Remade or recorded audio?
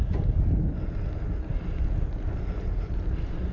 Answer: recorded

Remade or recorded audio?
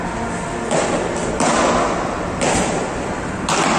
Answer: recorded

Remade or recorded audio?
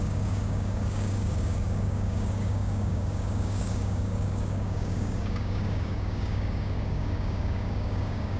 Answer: remade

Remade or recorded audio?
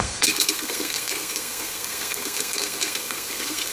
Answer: remade